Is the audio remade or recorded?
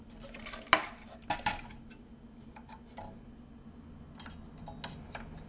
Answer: recorded